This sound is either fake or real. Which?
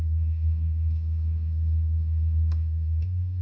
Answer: fake